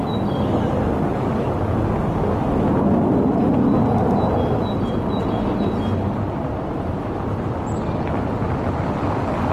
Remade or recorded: recorded